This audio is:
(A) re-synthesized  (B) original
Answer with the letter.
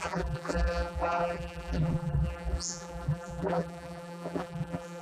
A